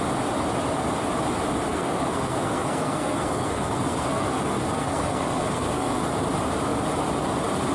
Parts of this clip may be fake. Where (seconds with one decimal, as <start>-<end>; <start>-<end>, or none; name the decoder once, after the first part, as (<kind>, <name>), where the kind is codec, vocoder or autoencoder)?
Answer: 1.7-6.1 (codec, SNAC)